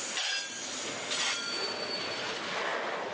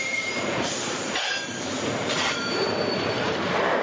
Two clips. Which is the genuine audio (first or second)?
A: first